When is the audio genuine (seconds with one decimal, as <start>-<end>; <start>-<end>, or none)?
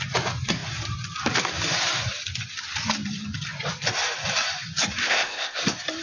0.0-5.0; 5.6-6.0